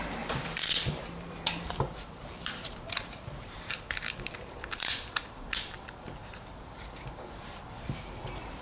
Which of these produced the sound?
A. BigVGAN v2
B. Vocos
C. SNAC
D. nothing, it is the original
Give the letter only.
A